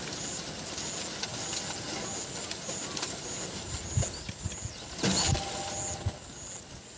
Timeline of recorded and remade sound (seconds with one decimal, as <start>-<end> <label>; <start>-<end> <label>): 0.0-7.0 recorded

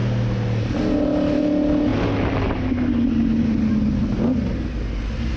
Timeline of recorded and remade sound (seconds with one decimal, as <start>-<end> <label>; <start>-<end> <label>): 0.0-5.4 recorded

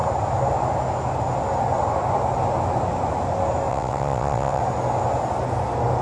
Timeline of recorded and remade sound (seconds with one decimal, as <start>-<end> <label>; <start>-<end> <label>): 0.0-3.7 recorded; 3.7-4.6 remade; 4.6-6.0 recorded

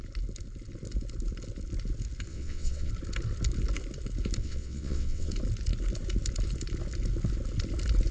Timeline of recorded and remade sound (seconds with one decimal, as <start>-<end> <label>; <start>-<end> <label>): 0.0-2.3 recorded; 2.3-2.9 remade; 2.9-4.4 recorded; 4.4-5.3 remade; 5.3-8.1 recorded

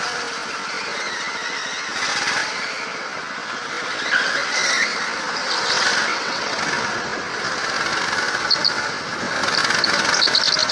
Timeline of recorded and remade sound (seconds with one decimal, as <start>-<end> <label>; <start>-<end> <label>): 0.0-6.1 recorded; 6.1-6.6 remade; 6.6-10.7 recorded

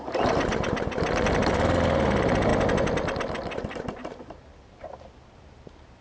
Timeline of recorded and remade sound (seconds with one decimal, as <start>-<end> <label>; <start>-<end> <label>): 0.0-6.0 recorded